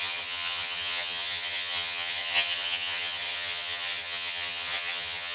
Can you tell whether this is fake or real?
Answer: fake